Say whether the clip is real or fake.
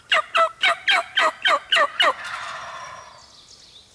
real